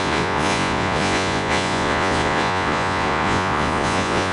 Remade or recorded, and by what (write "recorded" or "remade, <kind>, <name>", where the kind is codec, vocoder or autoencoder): remade, vocoder, Vocos